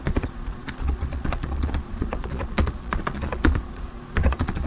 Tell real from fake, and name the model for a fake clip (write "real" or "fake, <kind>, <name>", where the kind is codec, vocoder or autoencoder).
fake, vocoder, Vocos